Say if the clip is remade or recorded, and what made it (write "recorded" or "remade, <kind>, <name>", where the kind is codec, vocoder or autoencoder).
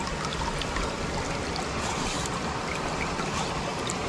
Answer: recorded